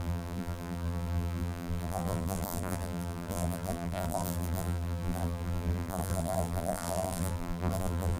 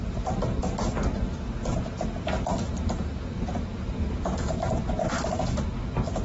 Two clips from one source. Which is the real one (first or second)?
second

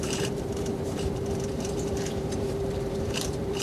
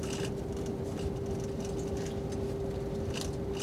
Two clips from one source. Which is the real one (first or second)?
second